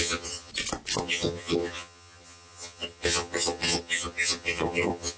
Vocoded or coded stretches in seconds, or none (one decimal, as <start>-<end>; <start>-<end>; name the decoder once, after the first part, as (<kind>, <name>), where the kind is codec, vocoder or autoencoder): 0.0-0.5 (vocoder, HiFi-GAN); 1.0-5.2